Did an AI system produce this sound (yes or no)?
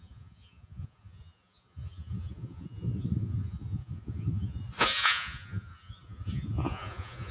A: yes